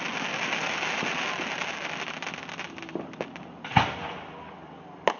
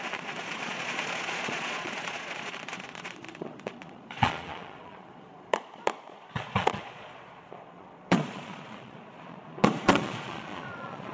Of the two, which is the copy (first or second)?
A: second